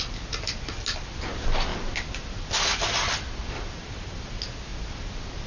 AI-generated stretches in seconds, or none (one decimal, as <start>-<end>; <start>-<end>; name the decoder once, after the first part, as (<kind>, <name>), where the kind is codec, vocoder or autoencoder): none